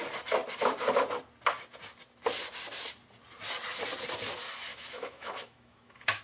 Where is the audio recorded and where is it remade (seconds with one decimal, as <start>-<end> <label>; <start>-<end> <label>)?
0.0-4.7 recorded; 4.7-6.2 remade